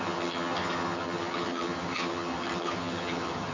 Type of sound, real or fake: fake